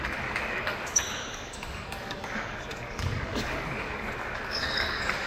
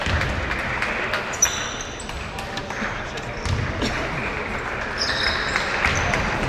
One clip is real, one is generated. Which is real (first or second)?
second